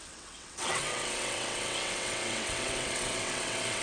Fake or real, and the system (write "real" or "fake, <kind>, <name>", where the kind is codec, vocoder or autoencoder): fake, vocoder, WaveNeXt